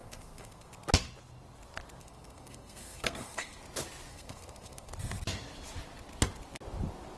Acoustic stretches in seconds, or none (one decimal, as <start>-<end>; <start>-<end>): 0.7-2.0; 3.6-4.1; 4.9-7.2